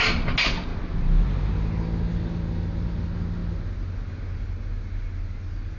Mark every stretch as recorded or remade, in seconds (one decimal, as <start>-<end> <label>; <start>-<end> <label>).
0.0-5.8 recorded